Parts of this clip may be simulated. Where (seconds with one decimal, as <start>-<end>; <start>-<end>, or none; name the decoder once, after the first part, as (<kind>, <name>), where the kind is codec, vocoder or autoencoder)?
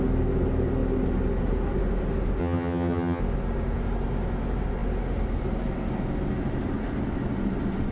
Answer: 2.4-3.2 (vocoder, HiFi-GAN)